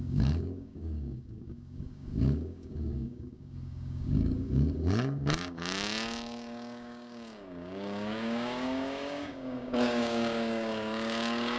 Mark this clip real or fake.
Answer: fake